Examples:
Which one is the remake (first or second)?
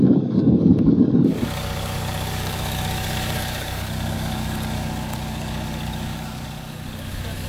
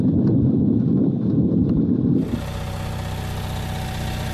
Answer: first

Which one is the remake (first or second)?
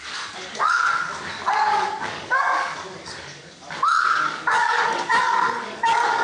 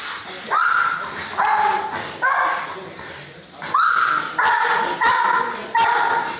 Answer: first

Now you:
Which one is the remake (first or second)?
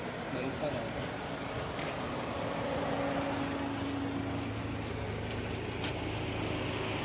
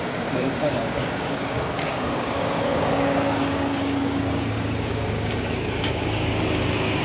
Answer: second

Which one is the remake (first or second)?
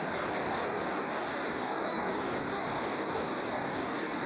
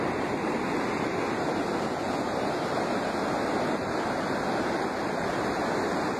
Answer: first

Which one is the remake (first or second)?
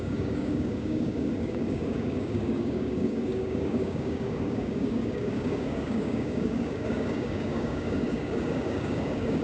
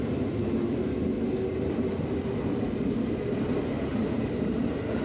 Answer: first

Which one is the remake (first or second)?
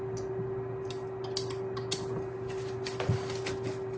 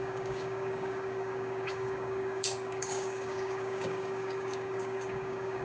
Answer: second